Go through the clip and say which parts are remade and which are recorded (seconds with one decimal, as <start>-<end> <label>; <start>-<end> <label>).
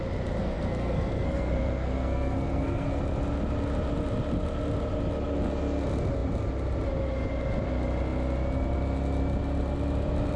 0.0-0.4 recorded; 0.4-3.0 remade; 3.0-10.4 recorded